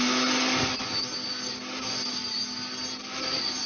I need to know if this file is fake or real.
real